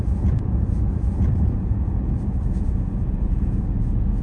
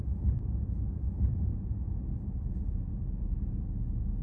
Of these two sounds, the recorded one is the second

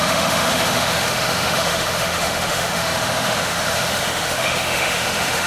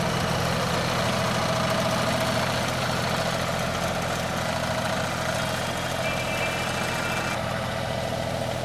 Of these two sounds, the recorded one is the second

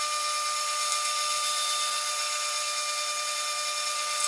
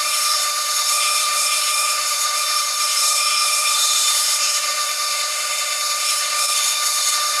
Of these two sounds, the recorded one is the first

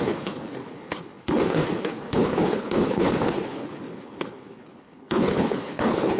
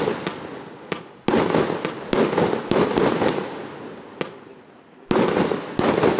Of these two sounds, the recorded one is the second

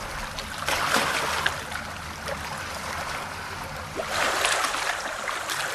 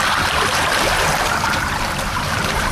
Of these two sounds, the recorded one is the first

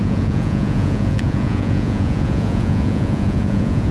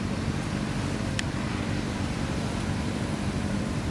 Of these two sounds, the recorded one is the second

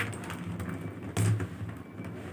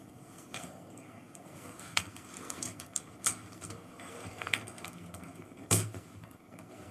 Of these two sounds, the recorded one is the first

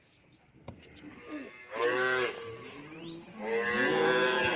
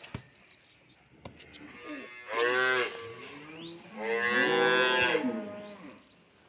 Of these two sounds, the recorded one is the second